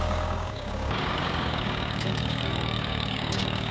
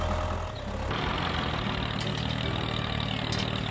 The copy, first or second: first